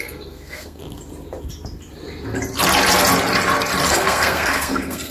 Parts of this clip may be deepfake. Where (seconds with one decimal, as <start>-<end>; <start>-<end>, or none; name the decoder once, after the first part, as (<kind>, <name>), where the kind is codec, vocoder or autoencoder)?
0.0-0.8 (codec, SNAC); 3.9-5.1